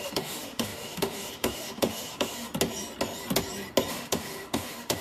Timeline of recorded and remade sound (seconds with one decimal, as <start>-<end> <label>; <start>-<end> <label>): 0.0-2.5 remade; 2.5-3.9 recorded; 3.9-5.0 remade